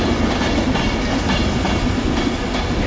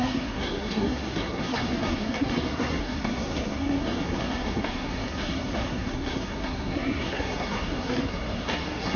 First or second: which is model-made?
second